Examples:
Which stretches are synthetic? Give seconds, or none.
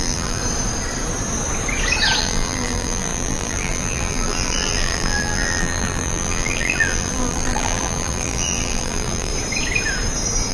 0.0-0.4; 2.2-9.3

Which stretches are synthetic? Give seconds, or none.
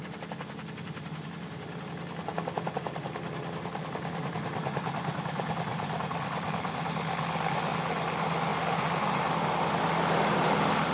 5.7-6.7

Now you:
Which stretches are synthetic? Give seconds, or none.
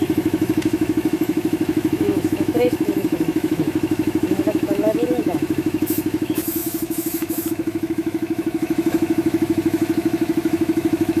0.0-11.2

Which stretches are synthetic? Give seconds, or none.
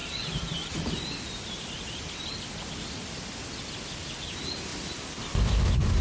0.0-3.6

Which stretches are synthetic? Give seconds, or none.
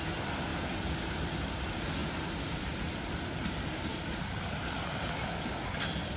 none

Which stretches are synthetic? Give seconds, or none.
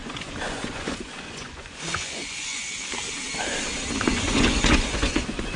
0.0-2.8; 4.1-5.6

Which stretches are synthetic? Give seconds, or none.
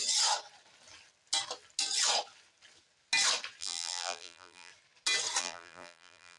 3.6-4.7; 5.4-6.4